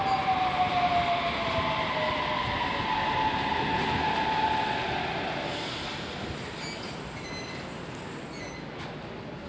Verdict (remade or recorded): recorded